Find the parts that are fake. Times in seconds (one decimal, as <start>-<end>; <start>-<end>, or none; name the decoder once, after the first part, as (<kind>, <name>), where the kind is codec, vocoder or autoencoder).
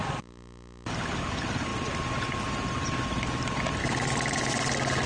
none